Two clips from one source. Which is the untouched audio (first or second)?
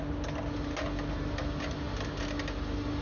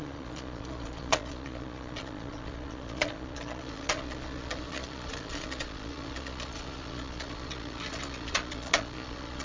first